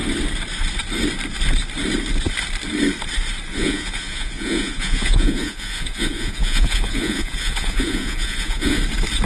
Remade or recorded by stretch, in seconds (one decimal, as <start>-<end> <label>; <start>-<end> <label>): 0.0-3.5 recorded; 3.5-8.8 remade; 8.8-9.3 recorded